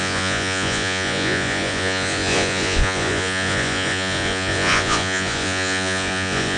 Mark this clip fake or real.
fake